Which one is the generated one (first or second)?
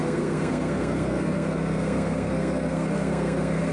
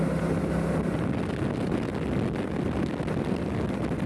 first